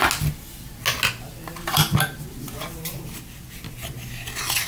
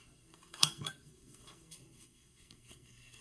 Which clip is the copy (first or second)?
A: second